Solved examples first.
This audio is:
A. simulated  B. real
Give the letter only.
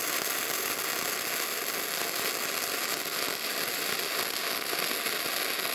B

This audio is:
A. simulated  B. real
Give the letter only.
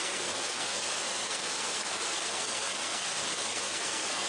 A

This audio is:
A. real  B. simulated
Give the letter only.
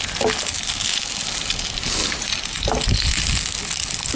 A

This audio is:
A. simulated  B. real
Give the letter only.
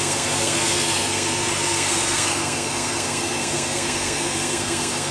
A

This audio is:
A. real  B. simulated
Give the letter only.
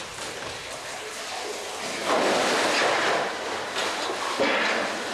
A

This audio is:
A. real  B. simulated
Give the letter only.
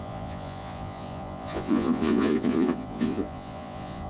B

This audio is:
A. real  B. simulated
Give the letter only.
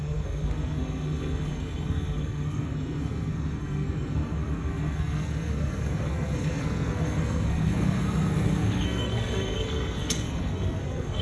B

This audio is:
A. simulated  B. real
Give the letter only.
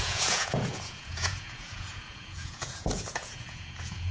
A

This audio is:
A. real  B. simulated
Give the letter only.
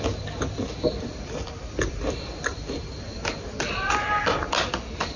A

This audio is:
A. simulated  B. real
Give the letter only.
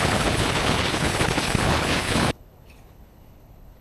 A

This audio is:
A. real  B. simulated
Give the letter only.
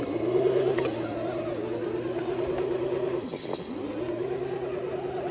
A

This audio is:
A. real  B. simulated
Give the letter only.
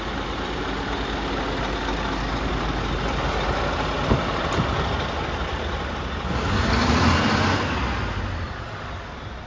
A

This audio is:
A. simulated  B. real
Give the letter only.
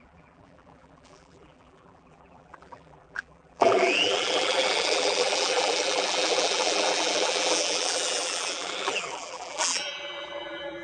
A